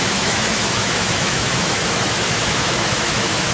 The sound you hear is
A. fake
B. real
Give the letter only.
A